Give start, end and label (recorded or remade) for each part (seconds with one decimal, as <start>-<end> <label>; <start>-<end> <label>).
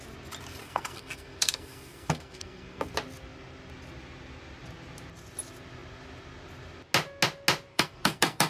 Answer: 0.0-0.6 recorded; 0.6-2.9 remade; 2.9-7.7 recorded; 7.7-8.5 remade